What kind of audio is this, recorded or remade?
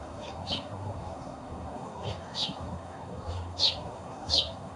remade